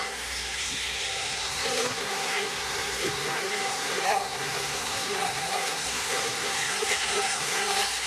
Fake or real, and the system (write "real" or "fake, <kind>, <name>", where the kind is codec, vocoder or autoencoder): fake, codec, SNAC